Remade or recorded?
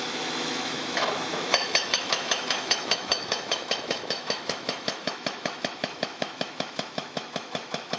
remade